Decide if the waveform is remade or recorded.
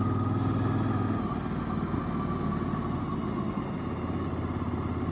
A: recorded